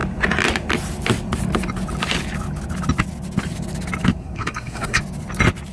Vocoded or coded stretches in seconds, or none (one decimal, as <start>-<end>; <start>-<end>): 4.2-5.0